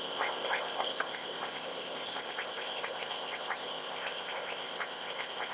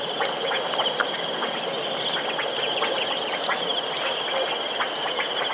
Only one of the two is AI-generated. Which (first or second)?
first